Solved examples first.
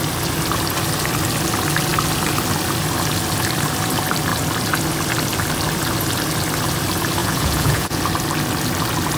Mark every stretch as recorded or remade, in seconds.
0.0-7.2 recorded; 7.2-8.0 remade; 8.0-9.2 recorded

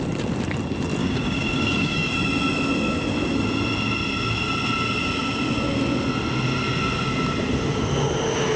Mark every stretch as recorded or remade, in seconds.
0.0-1.0 recorded; 1.0-2.1 remade; 2.1-8.6 recorded

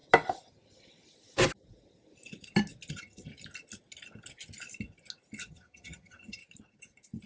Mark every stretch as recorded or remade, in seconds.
0.0-2.9 recorded; 2.9-3.3 remade; 3.3-5.4 recorded; 5.4-6.4 remade; 6.4-7.3 recorded

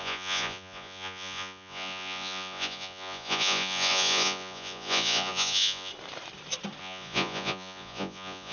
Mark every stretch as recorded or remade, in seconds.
0.0-5.9 remade; 5.9-6.8 recorded; 6.8-8.5 remade

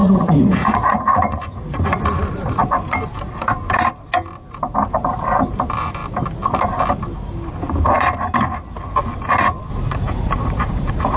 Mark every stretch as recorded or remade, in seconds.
0.0-2.0 remade; 2.0-9.7 recorded; 9.7-11.2 remade

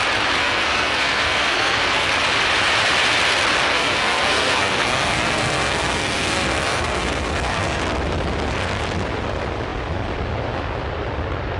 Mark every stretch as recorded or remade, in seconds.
0.0-0.4 recorded; 0.4-2.1 remade; 2.1-3.7 recorded; 3.7-7.8 remade; 7.8-11.6 recorded